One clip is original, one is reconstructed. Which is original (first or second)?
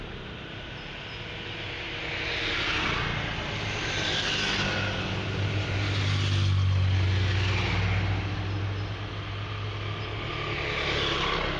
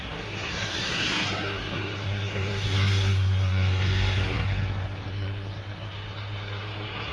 first